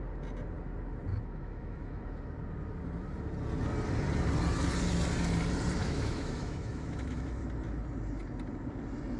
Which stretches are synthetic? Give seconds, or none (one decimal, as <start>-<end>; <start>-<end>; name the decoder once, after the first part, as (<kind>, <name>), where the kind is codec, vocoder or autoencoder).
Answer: 1.1-2.0 (autoencoder, DAC-VAE); 5.8-7.4